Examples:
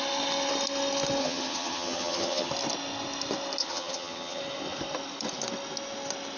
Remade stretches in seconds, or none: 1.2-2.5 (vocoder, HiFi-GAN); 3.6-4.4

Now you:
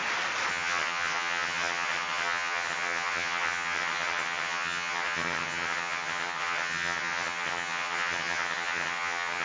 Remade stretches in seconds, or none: 0.5-9.4 (vocoder, HiFi-GAN)

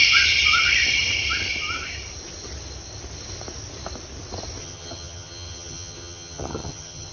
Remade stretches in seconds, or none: 4.6-7.1 (vocoder, HiFi-GAN)

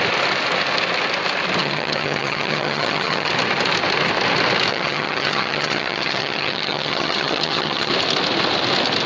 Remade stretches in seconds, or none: 1.6-3.3 (vocoder, HiFi-GAN); 4.7-7.9

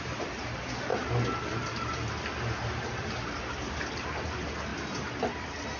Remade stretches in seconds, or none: none